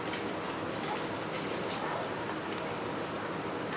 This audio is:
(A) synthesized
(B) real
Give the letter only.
B